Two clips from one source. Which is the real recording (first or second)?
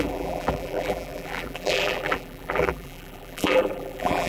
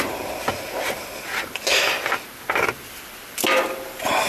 second